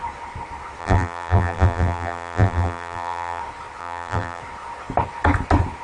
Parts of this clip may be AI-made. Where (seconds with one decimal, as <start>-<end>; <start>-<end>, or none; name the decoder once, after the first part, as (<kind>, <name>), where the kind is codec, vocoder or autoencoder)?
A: 0.8-3.4 (vocoder, BigVGAN v2); 3.8-4.4